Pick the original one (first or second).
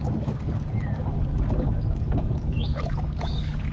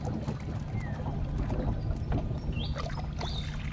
second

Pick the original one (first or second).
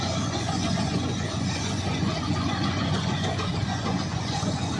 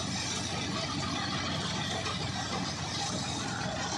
second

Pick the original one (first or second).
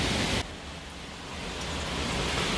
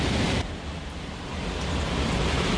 first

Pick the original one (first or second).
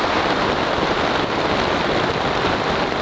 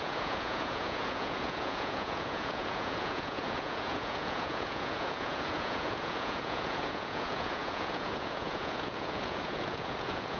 first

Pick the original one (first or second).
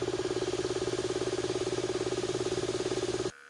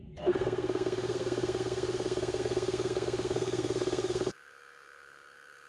first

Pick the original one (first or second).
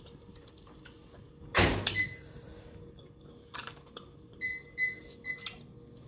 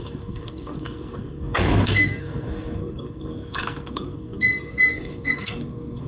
first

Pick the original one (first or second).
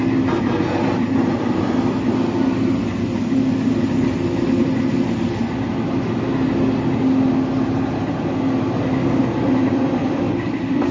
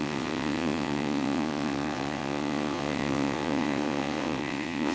first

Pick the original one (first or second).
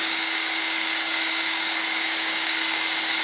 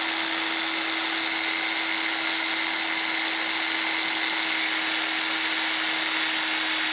second